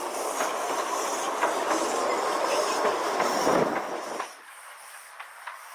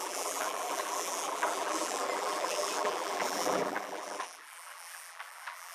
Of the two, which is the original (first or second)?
first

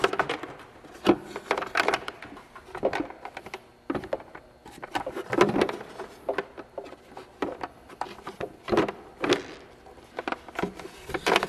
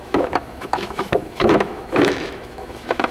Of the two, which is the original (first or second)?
first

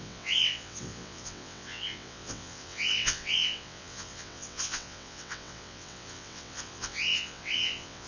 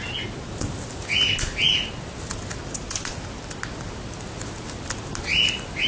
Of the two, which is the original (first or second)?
second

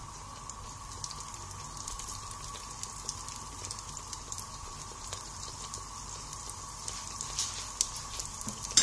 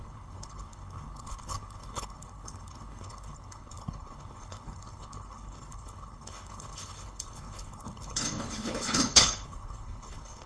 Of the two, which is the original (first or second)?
first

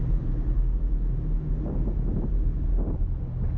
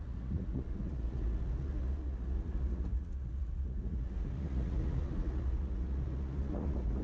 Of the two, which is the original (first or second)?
first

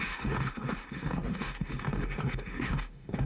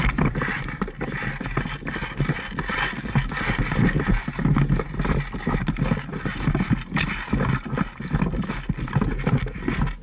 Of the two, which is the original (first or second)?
second